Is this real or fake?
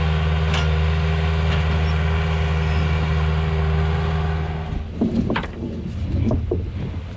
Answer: real